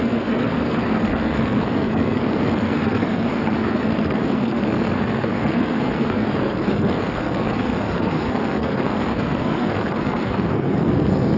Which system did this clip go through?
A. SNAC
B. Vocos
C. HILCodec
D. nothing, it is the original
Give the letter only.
A